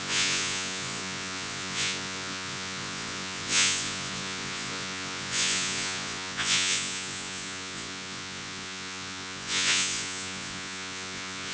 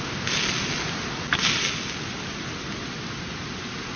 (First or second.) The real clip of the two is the second